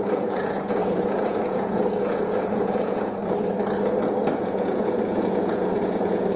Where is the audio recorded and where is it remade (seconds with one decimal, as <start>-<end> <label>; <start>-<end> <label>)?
0.0-3.2 remade; 3.2-4.4 recorded; 4.4-6.4 remade